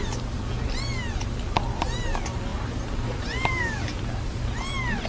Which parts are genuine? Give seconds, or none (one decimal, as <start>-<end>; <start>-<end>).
0.0-5.1